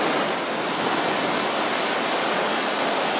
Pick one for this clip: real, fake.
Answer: real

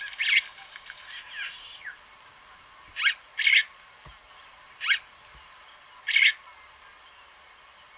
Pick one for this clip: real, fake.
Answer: real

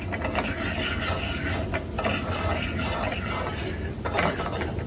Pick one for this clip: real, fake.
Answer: real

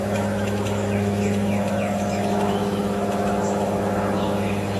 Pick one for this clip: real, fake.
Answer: fake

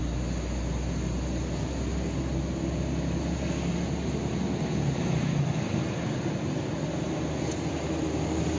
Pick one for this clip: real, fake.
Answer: real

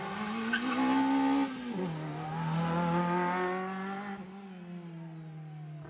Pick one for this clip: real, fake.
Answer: real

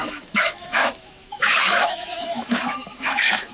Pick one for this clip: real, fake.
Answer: fake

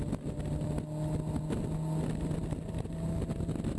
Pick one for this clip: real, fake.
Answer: real